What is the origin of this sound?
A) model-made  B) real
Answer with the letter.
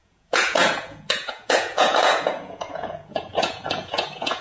A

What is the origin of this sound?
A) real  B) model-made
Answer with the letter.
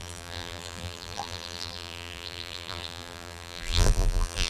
B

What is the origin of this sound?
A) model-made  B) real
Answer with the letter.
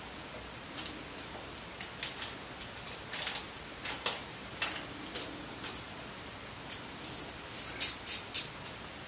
B